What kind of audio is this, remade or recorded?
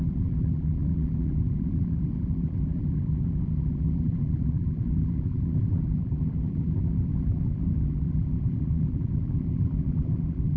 remade